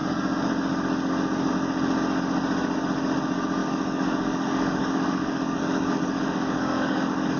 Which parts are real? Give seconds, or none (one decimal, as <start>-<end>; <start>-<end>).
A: 0.0-3.6